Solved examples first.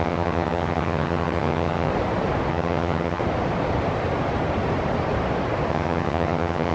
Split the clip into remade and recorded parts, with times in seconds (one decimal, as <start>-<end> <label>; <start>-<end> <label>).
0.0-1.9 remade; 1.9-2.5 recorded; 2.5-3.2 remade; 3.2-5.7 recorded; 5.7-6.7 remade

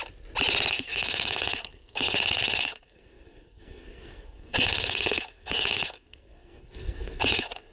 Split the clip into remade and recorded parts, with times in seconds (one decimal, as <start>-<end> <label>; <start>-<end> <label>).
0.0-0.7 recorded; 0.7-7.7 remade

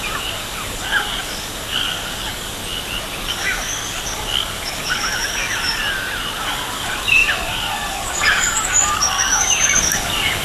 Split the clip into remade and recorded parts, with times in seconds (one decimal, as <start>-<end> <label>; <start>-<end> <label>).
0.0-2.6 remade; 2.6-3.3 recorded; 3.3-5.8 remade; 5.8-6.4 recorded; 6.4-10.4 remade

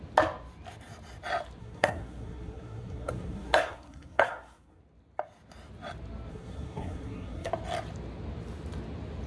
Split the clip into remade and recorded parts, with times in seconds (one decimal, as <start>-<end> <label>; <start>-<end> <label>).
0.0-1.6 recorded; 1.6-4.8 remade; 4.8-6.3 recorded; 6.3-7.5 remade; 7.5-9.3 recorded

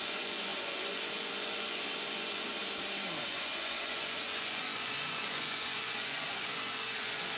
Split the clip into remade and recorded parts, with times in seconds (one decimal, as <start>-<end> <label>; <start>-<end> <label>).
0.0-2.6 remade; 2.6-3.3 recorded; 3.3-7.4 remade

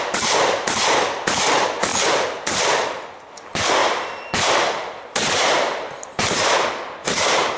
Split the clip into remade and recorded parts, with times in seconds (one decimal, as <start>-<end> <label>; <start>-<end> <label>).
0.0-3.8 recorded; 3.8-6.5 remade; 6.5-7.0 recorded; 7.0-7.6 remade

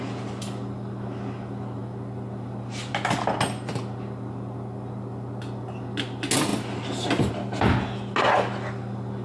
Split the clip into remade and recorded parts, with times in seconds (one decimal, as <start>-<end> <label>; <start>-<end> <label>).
0.0-9.2 recorded